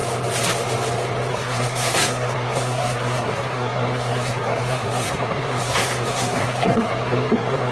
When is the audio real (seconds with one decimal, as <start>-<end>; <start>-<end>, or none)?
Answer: 0.0-1.3